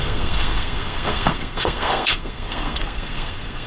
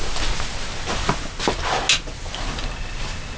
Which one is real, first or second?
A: second